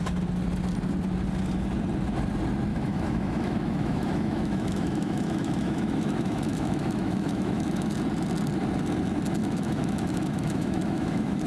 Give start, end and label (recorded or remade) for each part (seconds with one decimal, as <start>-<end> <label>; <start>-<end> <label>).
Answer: 0.0-2.7 recorded; 2.7-7.9 remade; 7.9-9.4 recorded; 9.4-11.5 remade